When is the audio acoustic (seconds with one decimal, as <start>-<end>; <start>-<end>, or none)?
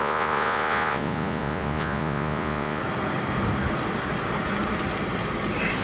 2.8-5.8